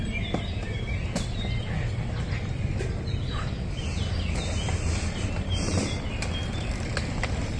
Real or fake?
real